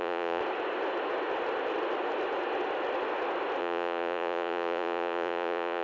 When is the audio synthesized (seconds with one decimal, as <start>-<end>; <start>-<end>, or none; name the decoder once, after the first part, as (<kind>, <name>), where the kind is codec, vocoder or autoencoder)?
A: 0.0-0.4 (vocoder, Vocos); 3.6-5.8